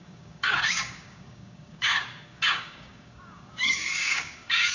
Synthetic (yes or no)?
yes